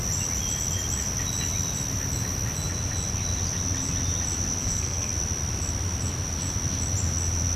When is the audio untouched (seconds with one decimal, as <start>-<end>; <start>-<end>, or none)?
0.0-4.6; 5.1-7.6